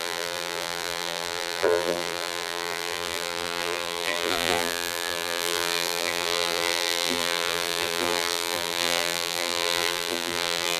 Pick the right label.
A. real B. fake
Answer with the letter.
B